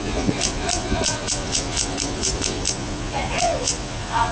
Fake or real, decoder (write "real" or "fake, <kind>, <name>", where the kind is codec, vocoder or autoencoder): fake, vocoder, Vocos